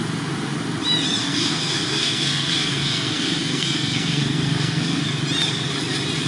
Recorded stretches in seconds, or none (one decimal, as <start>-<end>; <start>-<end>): 0.0-1.2; 5.0-6.3

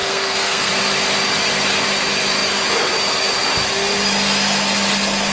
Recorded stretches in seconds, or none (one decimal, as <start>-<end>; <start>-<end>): 0.7-5.3

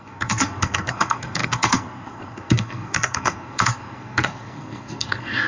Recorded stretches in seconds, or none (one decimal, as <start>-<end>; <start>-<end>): none

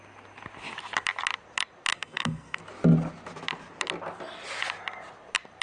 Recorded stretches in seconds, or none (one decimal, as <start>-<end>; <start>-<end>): 0.0-1.9; 2.6-5.6

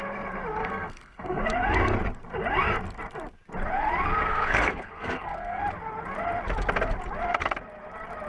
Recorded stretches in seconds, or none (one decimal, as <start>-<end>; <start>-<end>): 0.0-0.6; 1.4-4.2; 5.6-8.3

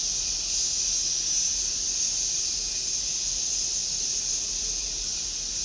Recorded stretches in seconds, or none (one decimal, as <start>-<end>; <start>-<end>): 0.0-5.6